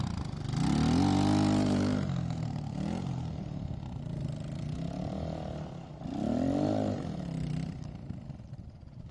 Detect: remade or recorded recorded